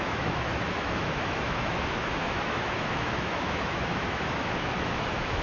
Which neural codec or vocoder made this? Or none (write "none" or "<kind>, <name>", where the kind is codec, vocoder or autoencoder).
autoencoder, DAC-VAE